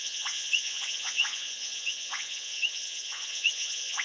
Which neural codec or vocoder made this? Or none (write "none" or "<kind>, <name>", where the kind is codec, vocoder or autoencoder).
vocoder, Vocos